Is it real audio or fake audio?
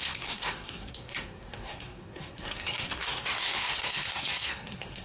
fake